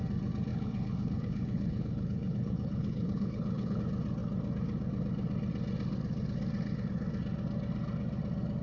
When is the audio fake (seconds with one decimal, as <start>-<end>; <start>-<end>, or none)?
0.5-3.8